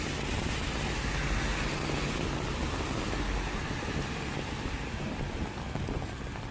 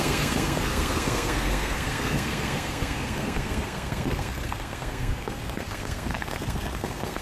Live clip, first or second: first